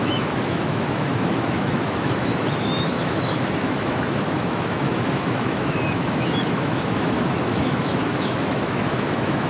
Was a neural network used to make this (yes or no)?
yes